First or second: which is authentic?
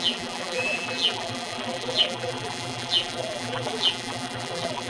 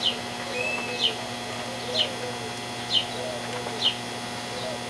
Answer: second